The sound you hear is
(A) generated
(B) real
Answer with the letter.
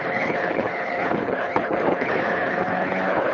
A